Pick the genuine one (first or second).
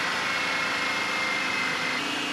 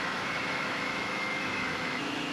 first